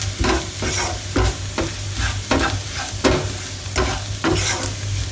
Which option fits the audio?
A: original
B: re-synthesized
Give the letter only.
A